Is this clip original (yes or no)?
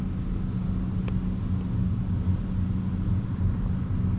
yes